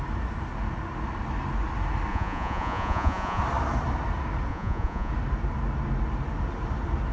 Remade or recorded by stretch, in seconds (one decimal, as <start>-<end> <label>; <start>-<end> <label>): 0.0-2.1 recorded; 2.1-3.4 remade; 3.4-4.5 recorded; 4.5-5.1 remade; 5.1-7.1 recorded